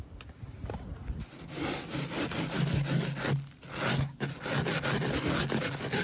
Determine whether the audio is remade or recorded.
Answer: recorded